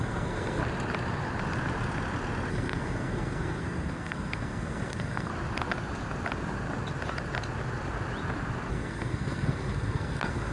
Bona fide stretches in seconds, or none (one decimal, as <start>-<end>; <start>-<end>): 0.6-2.5; 5.3-8.7